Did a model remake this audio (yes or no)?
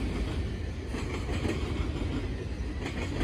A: no